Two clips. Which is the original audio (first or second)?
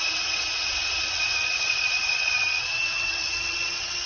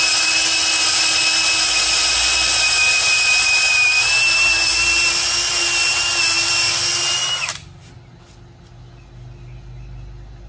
second